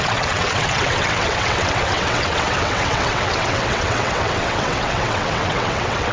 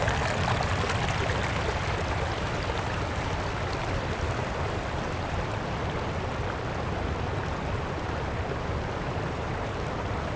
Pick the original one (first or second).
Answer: second